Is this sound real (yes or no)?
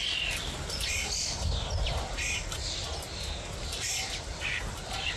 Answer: yes